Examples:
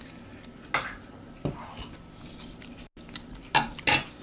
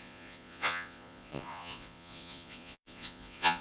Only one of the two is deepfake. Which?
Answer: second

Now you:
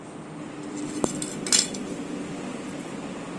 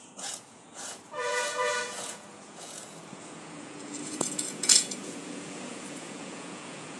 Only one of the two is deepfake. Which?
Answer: second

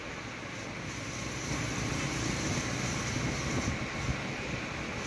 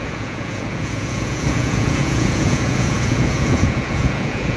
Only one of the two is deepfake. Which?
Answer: second